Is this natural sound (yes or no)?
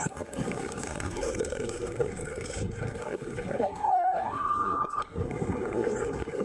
no